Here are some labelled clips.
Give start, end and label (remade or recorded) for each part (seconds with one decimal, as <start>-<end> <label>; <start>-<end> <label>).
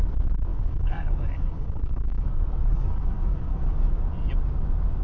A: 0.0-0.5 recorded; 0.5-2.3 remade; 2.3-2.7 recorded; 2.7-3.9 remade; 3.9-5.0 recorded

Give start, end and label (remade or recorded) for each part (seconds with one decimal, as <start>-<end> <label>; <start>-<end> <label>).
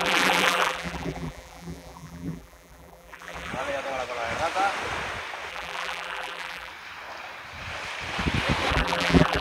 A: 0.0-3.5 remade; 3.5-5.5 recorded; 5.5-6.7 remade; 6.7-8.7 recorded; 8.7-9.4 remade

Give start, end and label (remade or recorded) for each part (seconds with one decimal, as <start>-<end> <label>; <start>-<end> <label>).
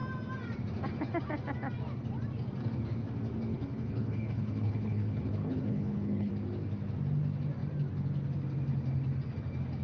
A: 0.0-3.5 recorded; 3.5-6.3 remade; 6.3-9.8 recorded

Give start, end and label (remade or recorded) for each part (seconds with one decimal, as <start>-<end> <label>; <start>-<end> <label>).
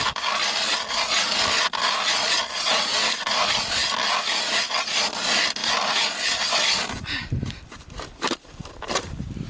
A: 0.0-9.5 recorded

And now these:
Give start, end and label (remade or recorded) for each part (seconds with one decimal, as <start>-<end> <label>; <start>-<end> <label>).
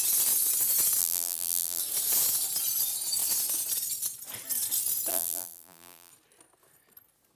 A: 0.0-1.0 recorded; 1.0-1.8 remade; 1.8-5.1 recorded; 5.1-6.1 remade; 6.1-7.3 recorded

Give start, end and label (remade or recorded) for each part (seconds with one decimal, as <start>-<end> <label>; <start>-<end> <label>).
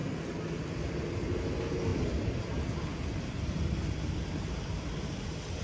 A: 0.0-1.1 remade; 1.1-2.9 recorded; 2.9-5.1 remade; 5.1-5.6 recorded